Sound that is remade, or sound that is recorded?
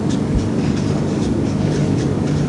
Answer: remade